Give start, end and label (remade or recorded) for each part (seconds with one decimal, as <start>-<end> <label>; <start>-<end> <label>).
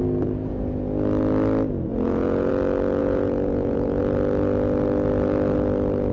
0.0-1.9 recorded; 1.9-2.5 remade; 2.5-3.0 recorded; 3.0-4.0 remade; 4.0-6.1 recorded